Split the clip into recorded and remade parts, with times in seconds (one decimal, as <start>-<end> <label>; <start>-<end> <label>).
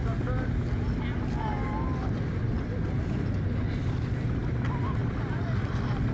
0.0-6.1 recorded